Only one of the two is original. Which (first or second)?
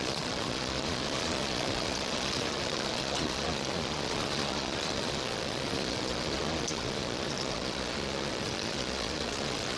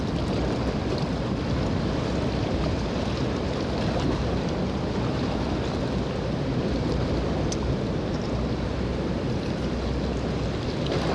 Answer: second